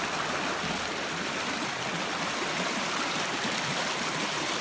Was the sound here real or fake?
fake